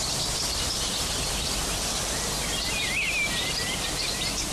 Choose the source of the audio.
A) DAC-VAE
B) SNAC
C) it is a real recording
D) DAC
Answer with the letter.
C